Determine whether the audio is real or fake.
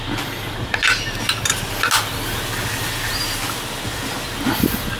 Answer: real